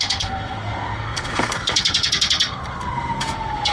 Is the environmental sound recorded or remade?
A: remade